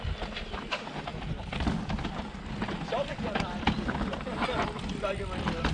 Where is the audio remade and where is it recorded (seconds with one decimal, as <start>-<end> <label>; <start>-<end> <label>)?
0.0-3.1 recorded; 3.1-5.2 remade; 5.2-5.7 recorded